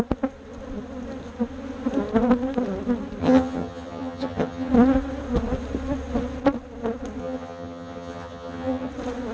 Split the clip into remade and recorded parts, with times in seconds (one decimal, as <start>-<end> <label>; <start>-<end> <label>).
0.0-3.2 recorded; 3.2-4.7 remade; 4.7-7.2 recorded; 7.2-8.9 remade; 8.9-9.3 recorded